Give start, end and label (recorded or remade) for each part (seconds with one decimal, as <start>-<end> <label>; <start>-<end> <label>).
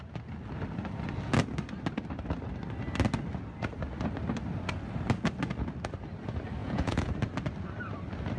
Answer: 0.0-6.6 recorded; 6.6-7.1 remade; 7.1-8.4 recorded